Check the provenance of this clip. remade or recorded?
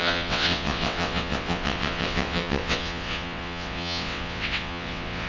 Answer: remade